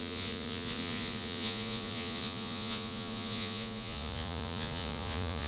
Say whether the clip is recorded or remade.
remade